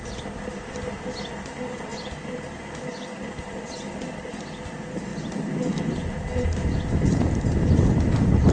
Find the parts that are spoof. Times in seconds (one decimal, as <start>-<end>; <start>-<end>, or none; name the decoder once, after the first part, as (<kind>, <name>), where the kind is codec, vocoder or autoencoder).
none